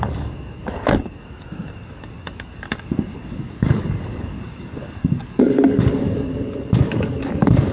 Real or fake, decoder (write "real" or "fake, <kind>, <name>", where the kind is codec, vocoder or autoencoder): fake, codec, DAC